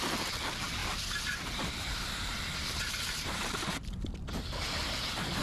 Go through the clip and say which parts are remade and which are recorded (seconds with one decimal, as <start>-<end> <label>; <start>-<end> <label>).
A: 0.0-0.8 recorded; 0.8-4.0 remade; 4.0-4.8 recorded; 4.8-5.4 remade